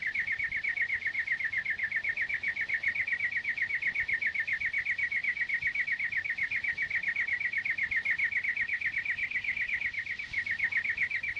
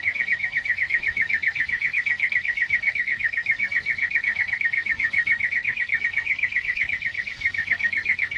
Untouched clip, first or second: first